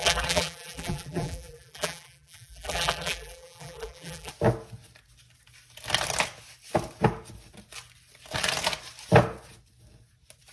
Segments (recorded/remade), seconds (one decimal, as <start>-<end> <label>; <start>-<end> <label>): 0.0-4.3 remade; 4.3-10.5 recorded